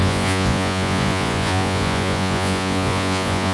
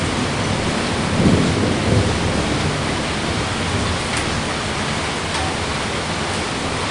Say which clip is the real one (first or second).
second